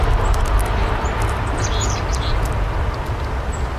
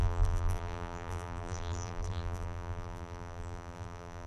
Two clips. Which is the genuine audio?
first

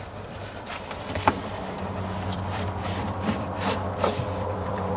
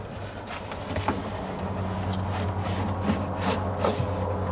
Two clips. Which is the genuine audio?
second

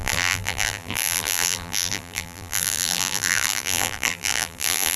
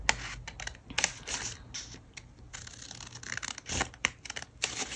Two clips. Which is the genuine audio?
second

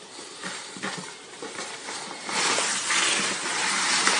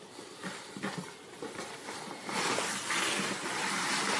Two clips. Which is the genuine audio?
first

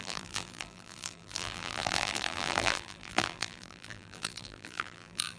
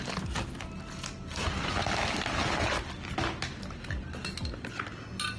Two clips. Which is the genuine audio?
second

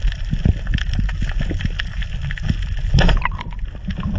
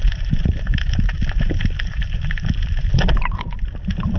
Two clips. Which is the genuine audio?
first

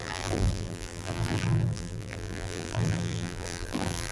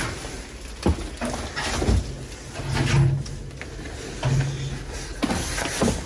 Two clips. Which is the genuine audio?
second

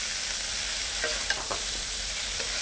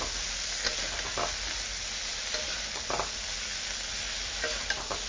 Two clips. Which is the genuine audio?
second